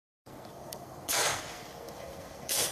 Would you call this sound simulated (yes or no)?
yes